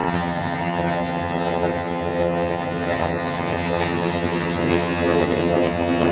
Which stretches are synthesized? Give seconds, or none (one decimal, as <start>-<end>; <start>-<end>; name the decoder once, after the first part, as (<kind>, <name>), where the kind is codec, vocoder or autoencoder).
0.0-6.1 (vocoder, HiFi-GAN)